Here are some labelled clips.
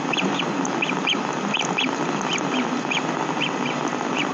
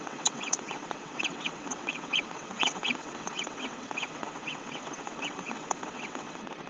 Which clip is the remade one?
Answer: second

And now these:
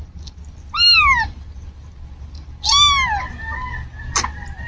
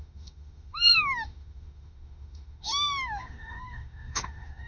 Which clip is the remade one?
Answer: second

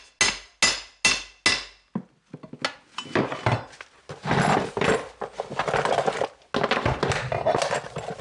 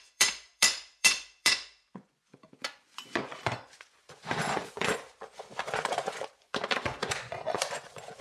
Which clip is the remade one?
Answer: second